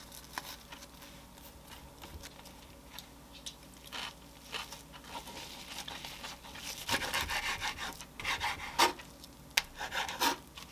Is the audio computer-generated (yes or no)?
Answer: no